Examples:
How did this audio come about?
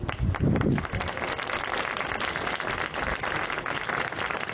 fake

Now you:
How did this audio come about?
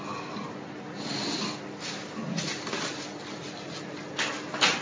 real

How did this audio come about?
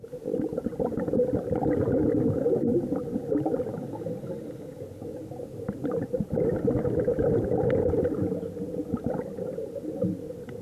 real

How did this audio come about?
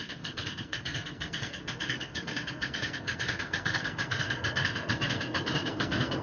fake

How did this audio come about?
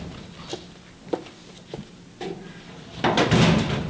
real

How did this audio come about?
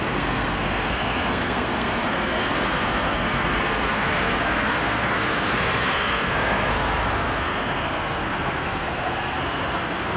fake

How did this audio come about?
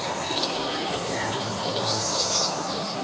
fake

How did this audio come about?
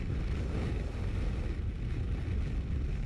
real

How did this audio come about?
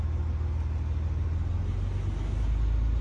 real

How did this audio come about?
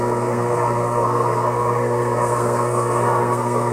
fake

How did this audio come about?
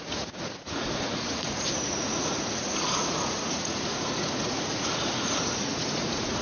fake